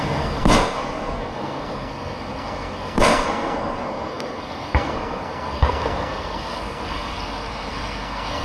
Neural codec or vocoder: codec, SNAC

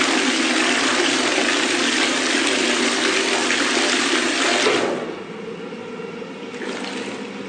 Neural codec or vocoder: none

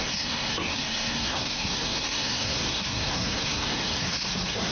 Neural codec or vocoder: codec, SNAC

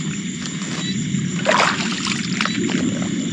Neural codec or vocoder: none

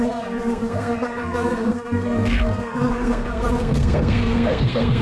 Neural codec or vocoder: codec, SNAC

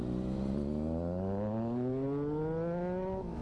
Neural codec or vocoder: none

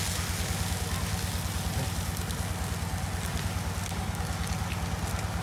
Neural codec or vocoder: none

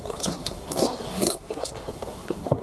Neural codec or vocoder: codec, SNAC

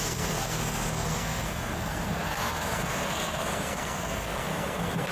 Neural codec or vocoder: codec, SNAC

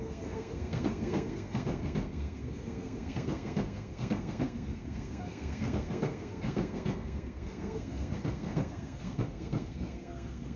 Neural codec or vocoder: codec, SNAC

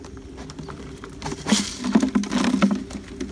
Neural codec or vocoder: none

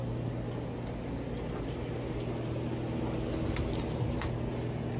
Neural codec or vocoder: none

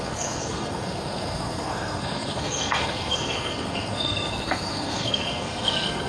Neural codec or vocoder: codec, SNAC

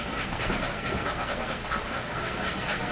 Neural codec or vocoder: codec, SNAC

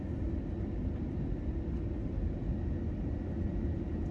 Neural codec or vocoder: none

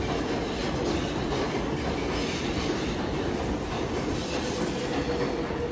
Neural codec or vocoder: none